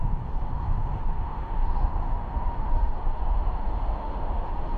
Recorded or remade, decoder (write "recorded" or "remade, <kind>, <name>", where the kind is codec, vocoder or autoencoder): remade, autoencoder, DAC-VAE